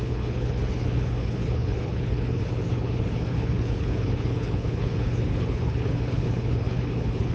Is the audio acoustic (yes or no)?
no